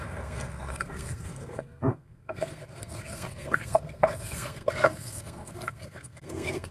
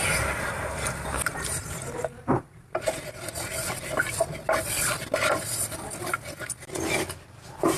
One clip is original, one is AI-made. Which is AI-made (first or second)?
first